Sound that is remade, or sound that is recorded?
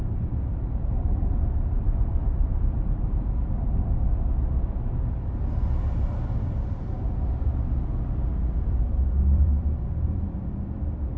remade